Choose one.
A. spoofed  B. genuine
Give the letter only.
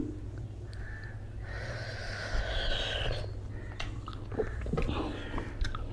B